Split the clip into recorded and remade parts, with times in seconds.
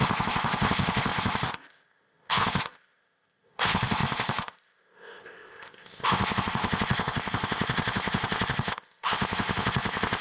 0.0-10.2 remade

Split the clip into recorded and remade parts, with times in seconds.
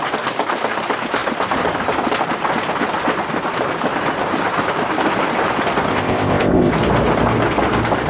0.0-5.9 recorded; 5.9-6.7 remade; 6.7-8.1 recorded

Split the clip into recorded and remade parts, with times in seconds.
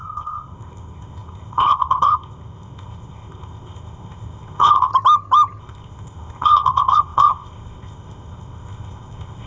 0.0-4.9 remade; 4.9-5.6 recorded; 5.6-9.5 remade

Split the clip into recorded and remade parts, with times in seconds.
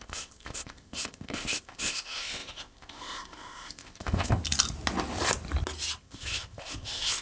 0.0-4.4 remade; 4.4-6.0 recorded; 6.0-7.2 remade